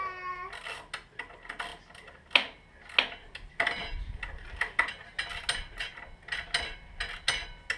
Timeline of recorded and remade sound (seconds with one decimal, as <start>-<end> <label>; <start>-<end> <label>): 0.0-7.8 recorded